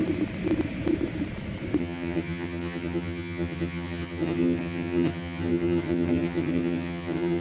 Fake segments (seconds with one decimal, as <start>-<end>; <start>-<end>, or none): 1.8-7.4